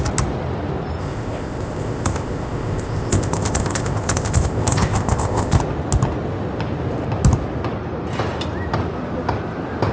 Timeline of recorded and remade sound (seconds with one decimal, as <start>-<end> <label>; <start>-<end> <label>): 0.0-1.0 recorded; 1.0-5.6 remade; 5.6-9.9 recorded